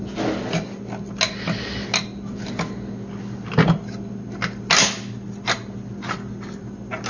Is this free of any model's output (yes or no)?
yes